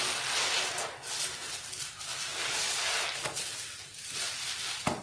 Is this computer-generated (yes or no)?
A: no